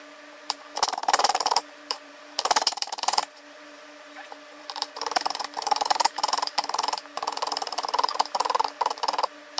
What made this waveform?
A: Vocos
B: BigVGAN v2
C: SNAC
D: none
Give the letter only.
B